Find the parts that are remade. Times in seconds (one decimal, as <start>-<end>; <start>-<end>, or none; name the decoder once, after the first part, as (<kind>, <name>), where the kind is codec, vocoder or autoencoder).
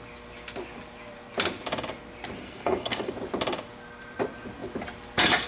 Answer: 2.4-3.1 (codec, SNAC)